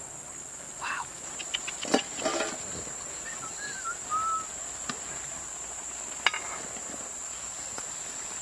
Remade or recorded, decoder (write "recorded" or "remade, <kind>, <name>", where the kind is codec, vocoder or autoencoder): recorded